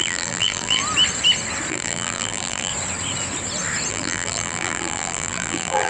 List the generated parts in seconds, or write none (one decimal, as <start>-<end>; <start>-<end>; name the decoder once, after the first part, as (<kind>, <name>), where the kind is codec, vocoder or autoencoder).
0.0-0.8 (vocoder, BigVGAN v2); 1.7-2.7; 3.9-5.9

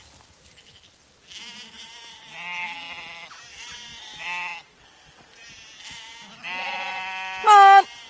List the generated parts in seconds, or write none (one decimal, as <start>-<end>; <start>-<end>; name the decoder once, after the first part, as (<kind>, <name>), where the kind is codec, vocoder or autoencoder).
none